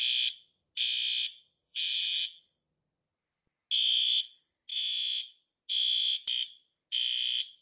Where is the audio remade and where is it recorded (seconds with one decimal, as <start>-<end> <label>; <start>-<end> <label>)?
0.0-1.6 recorded; 1.6-2.4 remade; 2.4-7.6 recorded